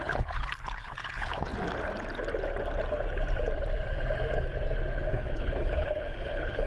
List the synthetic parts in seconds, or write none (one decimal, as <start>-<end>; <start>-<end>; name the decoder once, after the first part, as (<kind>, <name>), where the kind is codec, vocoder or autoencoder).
0.0-1.5 (codec, HILCodec); 5.1-6.7